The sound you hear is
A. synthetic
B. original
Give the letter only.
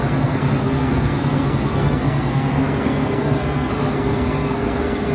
A